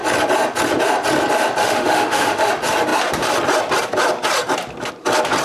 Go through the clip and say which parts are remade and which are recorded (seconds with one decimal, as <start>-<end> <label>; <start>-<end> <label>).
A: 0.0-1.6 recorded; 1.6-2.5 remade; 2.5-5.4 recorded